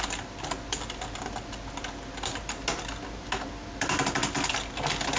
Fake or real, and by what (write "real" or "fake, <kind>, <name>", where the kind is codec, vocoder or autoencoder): real